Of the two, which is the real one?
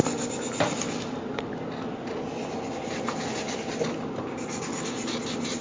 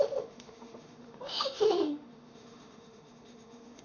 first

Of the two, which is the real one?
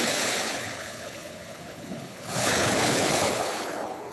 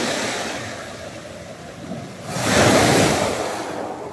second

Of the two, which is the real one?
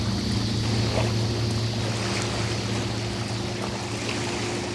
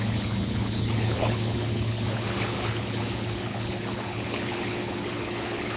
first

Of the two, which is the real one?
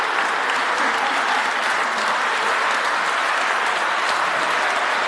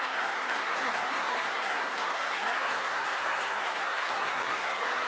first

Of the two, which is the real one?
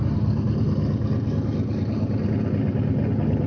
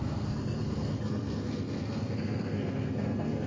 first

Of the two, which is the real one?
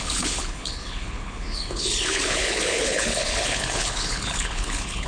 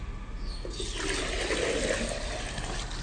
second